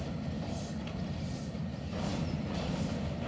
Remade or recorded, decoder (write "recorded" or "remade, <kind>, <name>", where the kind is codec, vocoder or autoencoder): recorded